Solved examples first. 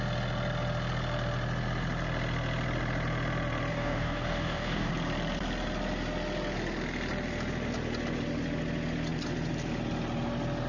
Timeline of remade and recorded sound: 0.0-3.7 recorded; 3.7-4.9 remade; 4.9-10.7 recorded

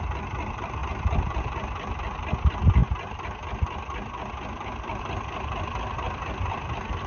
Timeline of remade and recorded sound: 0.0-7.1 recorded